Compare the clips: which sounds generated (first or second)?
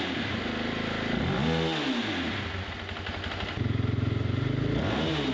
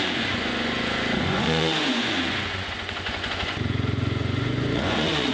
second